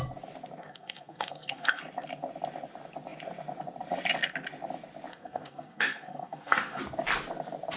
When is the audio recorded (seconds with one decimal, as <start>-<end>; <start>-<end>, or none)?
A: 0.0-0.6; 1.8-5.1; 6.8-7.8